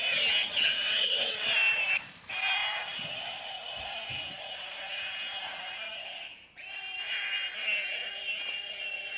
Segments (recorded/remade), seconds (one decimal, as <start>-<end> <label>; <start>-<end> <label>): 0.0-0.4 recorded; 0.4-1.5 remade; 1.5-9.2 recorded